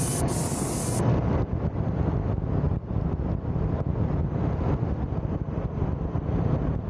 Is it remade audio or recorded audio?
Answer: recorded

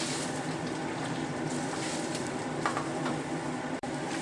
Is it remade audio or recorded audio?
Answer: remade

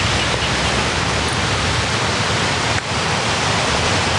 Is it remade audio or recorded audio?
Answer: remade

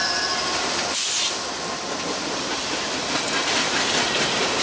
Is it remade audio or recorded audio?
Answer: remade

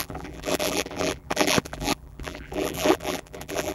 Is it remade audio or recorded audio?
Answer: remade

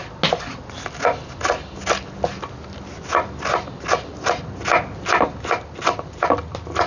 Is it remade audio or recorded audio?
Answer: recorded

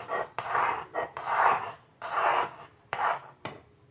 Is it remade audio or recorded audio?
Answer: remade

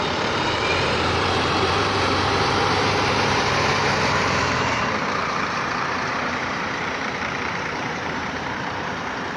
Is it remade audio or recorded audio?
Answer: remade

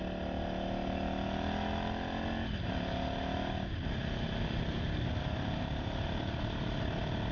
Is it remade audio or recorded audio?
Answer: recorded